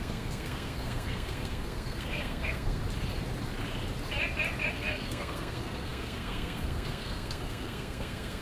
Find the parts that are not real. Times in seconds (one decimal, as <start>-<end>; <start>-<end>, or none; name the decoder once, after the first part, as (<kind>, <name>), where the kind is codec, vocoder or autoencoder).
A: 0.0-2.8 (codec, SNAC); 4.7-8.4